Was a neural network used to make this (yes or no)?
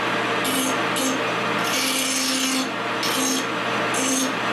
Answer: no